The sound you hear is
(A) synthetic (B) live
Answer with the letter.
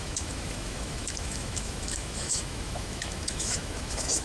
A